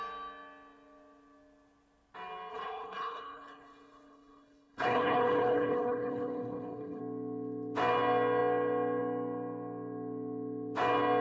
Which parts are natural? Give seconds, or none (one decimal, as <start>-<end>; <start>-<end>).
0.0-2.5; 7.0-11.2